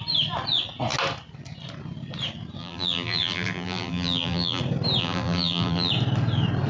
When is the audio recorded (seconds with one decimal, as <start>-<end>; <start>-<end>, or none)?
0.0-2.6; 4.6-5.0; 5.9-6.7